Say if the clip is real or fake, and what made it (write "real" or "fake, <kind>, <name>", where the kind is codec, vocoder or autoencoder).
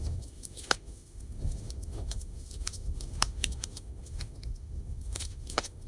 fake, autoencoder, DAC-VAE